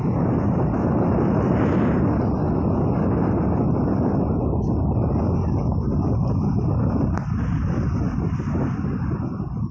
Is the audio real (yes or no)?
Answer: yes